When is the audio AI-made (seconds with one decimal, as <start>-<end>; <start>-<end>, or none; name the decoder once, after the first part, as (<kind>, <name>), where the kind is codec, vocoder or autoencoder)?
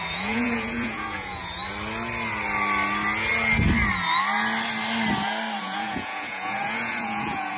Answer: 0.0-1.6 (vocoder, Vocos); 5.6-7.6